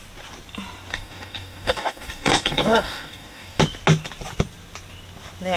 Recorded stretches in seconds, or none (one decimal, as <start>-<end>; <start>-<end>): 0.0-0.9; 3.6-5.6